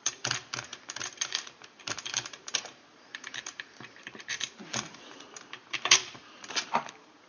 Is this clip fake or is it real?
fake